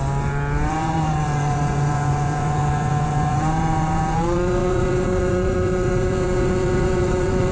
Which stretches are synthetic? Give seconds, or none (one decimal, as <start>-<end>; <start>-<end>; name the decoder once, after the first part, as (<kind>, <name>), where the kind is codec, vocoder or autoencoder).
0.7-7.5 (vocoder, Vocos)